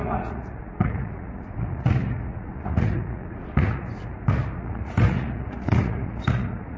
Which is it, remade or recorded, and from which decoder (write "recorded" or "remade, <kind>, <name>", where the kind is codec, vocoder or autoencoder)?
remade, vocoder, Vocos